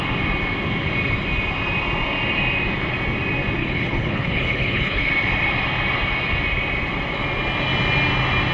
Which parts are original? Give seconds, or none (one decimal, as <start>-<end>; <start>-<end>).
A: 0.0-3.6; 5.1-8.5